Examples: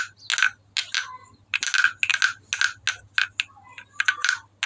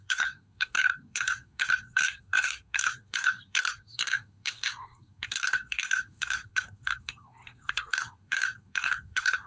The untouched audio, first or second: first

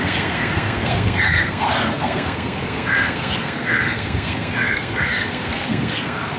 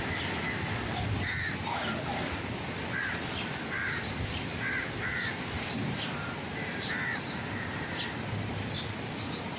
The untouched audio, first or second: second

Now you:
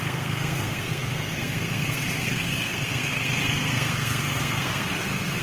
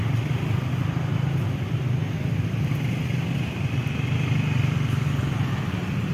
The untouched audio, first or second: second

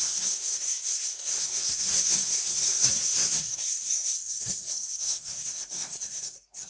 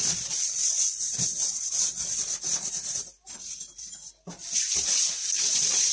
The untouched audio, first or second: second